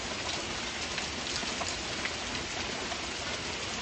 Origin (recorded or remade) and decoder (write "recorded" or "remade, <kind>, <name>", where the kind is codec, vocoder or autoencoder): recorded